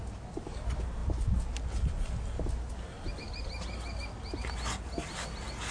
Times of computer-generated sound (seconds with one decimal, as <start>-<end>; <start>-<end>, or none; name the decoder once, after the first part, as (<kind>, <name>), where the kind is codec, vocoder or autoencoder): none